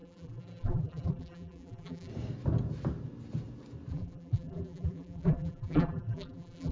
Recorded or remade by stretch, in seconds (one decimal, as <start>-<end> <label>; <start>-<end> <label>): 0.0-2.1 remade; 2.1-3.9 recorded; 3.9-6.7 remade